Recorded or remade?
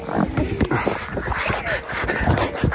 recorded